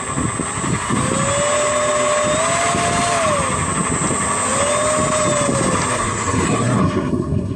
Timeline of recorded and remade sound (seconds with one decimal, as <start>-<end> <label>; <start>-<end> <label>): 0.0-5.9 recorded; 5.9-7.6 remade